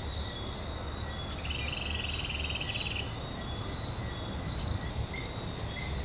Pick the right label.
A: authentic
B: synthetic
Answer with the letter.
A